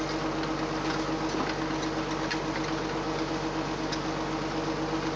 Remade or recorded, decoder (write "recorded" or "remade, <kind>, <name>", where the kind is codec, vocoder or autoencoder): recorded